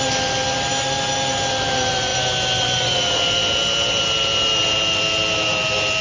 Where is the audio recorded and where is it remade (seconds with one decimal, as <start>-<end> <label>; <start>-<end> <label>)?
0.0-6.0 recorded

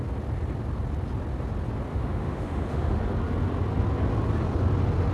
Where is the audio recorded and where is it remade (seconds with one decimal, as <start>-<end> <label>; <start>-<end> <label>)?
0.0-1.9 recorded; 1.9-3.0 remade; 3.0-5.1 recorded

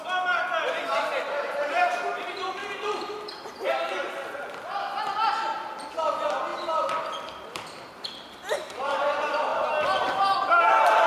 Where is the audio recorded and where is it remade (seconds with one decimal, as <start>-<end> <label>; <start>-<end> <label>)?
0.0-0.9 recorded; 0.9-1.4 remade; 1.4-6.5 recorded; 6.5-9.0 remade; 9.0-11.1 recorded

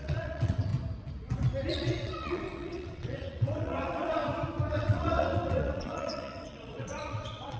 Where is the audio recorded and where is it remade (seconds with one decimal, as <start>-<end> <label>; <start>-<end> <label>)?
0.0-0.7 remade; 0.7-1.7 recorded; 1.7-4.2 remade; 4.2-4.7 recorded; 4.7-7.6 remade